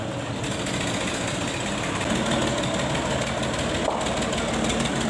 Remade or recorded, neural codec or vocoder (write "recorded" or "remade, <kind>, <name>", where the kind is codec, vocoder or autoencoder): recorded